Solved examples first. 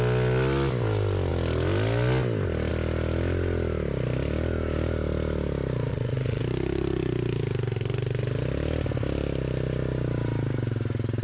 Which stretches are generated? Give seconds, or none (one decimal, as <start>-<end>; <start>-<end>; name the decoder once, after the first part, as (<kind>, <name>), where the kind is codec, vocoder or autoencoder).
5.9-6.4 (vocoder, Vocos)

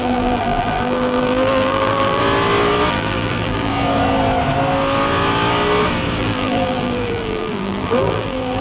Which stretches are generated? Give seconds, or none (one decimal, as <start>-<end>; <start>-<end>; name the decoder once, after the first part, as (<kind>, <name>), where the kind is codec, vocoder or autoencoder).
0.0-2.2 (vocoder, BigVGAN v2); 2.9-3.7; 6.2-8.6

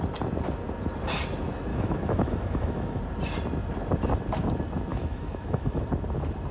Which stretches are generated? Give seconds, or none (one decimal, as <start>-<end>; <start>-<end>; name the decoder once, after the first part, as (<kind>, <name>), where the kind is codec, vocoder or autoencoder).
1.7-3.0 (autoencoder, DAC-VAE); 4.9-5.8

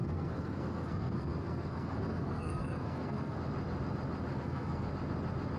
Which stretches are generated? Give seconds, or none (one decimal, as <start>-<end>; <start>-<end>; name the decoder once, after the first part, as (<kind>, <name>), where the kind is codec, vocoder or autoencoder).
0.0-3.4 (codec, SNAC); 4.3-4.9

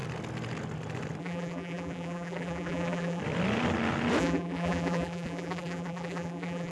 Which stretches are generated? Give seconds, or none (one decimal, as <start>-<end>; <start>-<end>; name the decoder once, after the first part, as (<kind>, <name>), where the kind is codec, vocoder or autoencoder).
1.2-3.2 (vocoder, BigVGAN v2); 4.2-6.7

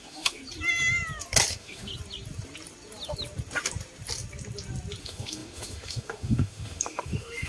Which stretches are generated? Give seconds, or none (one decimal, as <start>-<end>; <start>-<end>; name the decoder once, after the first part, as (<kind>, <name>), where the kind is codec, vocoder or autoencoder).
0.0-0.4 (autoencoder, DAC-VAE); 1.5-1.9; 5.0-7.5